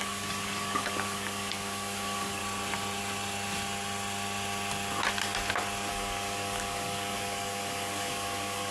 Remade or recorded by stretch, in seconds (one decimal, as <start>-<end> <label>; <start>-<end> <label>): 0.0-2.4 remade; 2.4-5.9 recorded; 5.9-8.7 remade